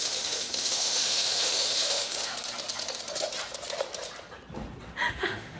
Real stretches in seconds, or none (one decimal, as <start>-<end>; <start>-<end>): 2.3-5.1